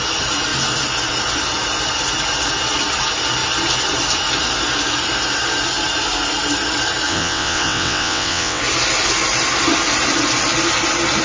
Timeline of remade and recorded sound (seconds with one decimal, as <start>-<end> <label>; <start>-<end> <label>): 0.0-7.1 recorded; 7.1-8.6 remade; 8.6-11.2 recorded